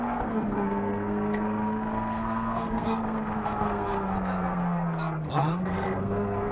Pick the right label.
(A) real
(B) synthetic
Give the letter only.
B